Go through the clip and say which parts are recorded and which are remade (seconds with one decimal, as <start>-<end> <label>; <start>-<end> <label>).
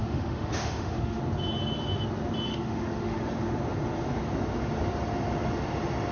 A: 0.0-1.2 remade; 1.2-2.5 recorded; 2.5-3.2 remade; 3.2-6.1 recorded